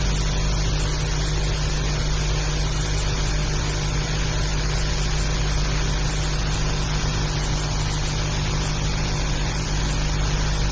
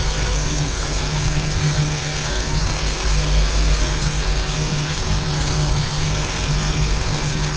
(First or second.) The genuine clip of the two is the first